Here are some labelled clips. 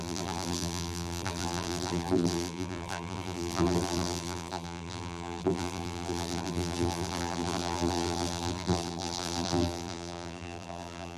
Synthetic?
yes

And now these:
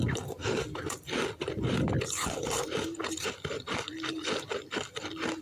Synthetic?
yes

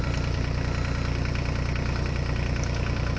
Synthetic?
no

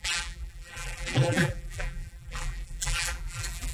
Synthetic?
yes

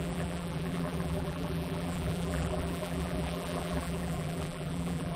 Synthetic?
yes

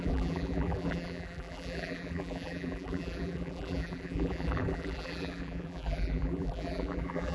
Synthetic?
yes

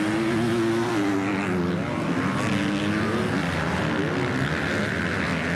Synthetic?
no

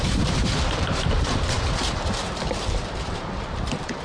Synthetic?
yes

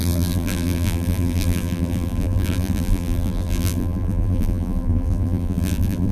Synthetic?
yes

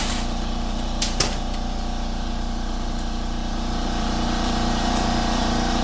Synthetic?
yes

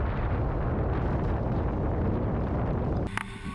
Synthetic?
no